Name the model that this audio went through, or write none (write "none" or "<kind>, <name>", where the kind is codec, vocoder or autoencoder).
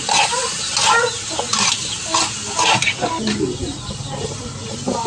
none